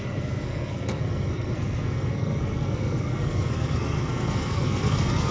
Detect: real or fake fake